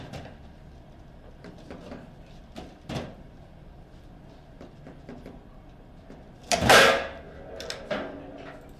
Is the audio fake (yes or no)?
no